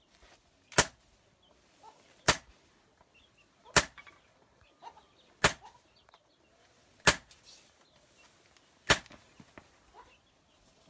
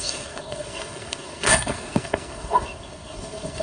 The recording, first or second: first